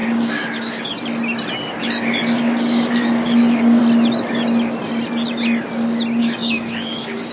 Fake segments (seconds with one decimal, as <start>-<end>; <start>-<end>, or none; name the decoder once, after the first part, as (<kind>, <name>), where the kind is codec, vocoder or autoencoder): 0.0-1.0 (codec, DAC); 1.8-3.8; 6.2-7.3